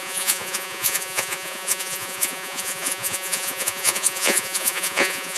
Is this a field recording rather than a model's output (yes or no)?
no